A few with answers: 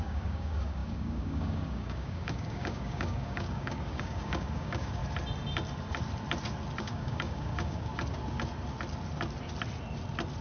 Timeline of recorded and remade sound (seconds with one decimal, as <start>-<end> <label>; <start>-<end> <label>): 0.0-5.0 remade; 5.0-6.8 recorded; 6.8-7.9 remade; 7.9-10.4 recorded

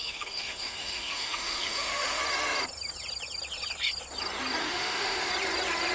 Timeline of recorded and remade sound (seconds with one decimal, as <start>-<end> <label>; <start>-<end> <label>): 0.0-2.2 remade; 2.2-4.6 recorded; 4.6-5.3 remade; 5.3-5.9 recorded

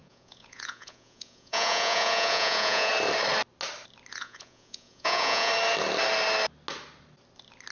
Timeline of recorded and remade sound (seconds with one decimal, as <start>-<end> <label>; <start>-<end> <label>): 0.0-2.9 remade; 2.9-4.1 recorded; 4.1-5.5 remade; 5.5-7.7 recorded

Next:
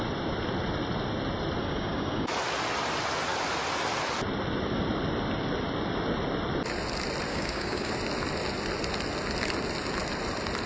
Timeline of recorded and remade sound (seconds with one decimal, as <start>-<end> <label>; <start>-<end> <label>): 0.0-1.6 recorded; 1.6-2.3 remade; 2.3-7.3 recorded; 7.3-7.9 remade; 7.9-10.7 recorded